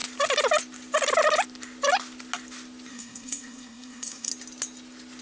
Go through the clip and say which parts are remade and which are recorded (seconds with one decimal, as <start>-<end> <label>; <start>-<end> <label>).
0.0-2.9 recorded; 2.9-4.3 remade; 4.3-5.2 recorded